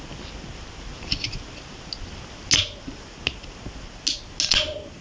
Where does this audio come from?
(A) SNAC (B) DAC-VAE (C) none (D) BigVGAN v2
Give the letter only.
C